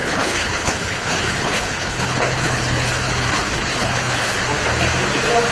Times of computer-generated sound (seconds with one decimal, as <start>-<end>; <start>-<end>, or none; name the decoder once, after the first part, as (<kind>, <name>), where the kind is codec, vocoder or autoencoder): 0.0-4.4 (codec, HILCodec)